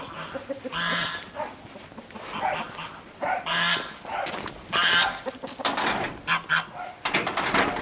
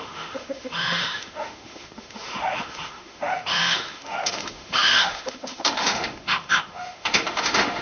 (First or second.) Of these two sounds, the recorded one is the first